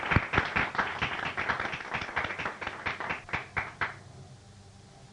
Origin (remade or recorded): recorded